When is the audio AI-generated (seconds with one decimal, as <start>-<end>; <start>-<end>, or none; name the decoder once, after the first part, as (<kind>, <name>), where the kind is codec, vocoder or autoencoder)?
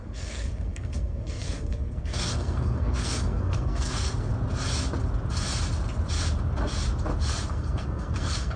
0.0-4.3 (codec, SNAC); 7.5-8.6